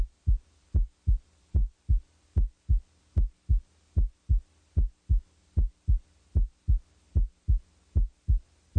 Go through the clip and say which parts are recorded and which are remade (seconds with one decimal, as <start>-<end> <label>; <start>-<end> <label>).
0.0-8.8 recorded